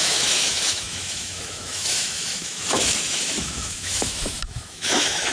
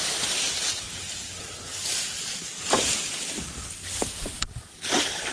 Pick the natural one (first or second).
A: second